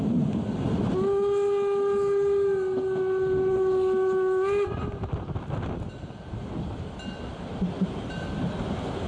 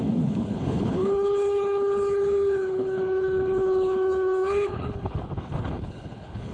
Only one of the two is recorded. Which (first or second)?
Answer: first